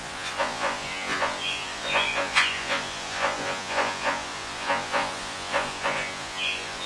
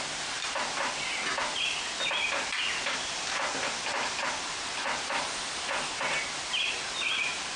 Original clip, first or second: second